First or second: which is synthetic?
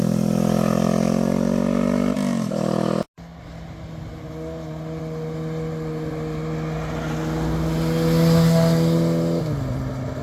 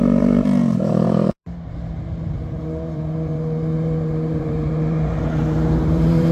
second